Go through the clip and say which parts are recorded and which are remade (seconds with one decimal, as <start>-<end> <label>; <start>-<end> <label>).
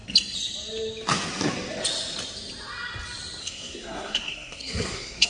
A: 0.0-3.4 recorded; 3.4-5.3 remade